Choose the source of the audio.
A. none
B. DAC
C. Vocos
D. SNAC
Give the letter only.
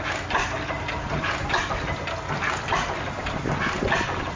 A